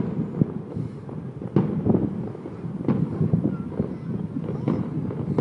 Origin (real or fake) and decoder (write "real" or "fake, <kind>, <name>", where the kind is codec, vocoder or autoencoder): real